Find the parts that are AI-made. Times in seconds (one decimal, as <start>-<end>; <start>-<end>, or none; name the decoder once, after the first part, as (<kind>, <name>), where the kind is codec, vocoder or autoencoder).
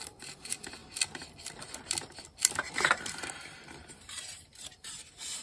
0.0-0.8 (vocoder, BigVGAN v2); 2.9-5.4